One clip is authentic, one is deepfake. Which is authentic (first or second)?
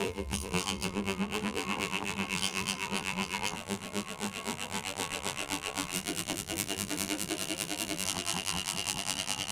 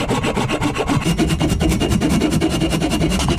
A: second